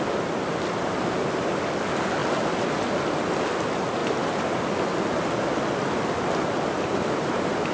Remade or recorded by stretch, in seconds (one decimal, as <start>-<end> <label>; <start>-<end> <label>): 0.0-4.0 recorded; 4.0-5.1 remade; 5.1-7.7 recorded